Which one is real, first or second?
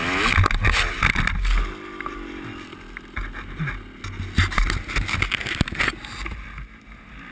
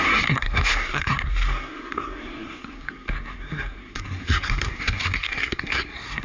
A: first